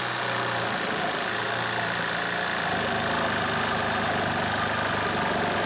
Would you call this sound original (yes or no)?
yes